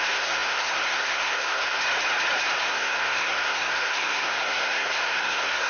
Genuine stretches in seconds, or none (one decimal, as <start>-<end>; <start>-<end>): 1.8-2.6